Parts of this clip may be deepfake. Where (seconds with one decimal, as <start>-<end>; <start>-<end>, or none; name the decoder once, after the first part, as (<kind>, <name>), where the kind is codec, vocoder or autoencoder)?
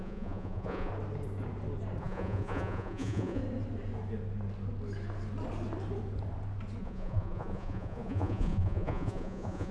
0.0-0.9 (vocoder, Vocos); 2.0-3.4; 6.8-9.7